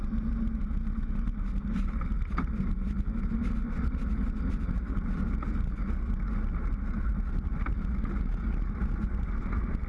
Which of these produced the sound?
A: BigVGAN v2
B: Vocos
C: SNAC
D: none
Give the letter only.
D